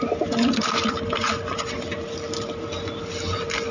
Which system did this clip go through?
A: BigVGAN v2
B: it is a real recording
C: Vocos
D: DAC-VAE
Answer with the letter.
B